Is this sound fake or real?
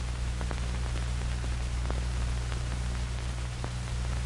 real